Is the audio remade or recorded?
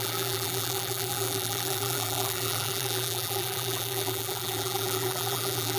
remade